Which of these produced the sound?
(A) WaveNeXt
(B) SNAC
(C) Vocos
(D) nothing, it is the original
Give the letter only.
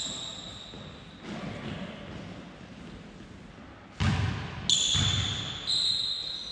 D